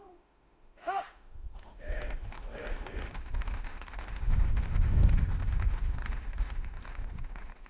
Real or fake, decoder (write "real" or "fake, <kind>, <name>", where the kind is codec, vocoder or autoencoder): fake, autoencoder, DAC-VAE